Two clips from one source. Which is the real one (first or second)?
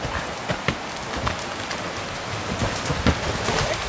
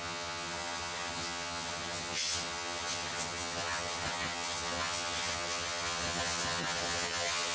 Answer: first